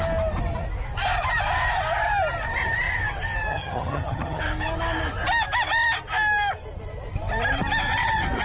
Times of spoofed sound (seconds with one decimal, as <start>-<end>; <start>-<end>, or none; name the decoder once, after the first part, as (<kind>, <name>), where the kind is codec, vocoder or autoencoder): 3.5-4.4 (vocoder, HiFi-GAN)